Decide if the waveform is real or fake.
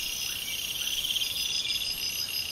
real